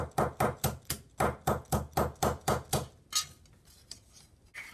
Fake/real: real